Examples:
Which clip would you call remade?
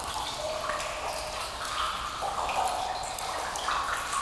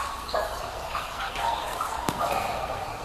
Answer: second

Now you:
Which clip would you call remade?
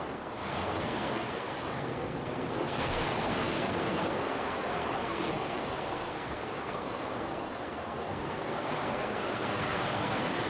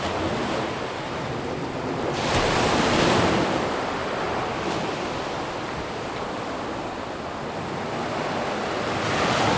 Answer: first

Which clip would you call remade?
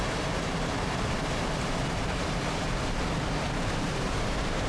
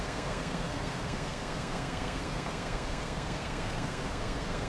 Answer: second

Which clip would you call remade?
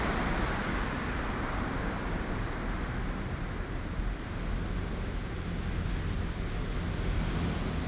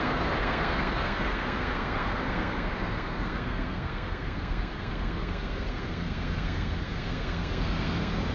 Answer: second